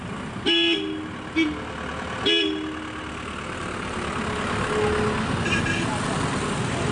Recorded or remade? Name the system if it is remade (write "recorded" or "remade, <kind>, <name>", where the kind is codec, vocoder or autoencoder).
recorded